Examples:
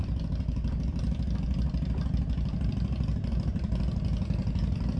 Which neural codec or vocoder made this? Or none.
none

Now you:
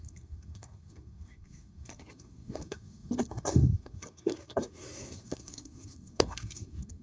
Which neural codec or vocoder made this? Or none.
codec, SNAC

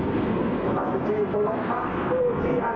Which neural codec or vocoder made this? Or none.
codec, SNAC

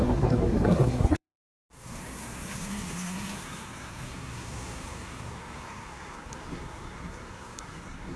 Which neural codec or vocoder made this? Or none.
codec, SNAC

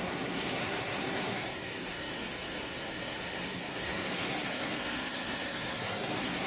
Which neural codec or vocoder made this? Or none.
codec, SNAC